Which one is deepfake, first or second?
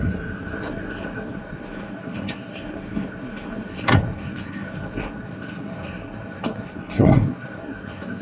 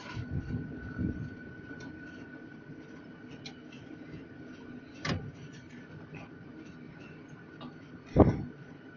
first